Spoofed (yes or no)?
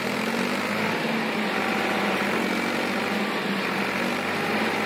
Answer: no